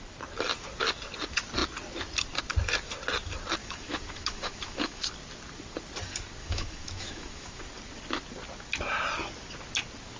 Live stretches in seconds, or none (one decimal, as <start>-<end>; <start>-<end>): 0.0-3.6; 5.1-6.4; 7.6-10.2